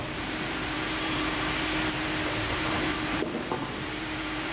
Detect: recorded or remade remade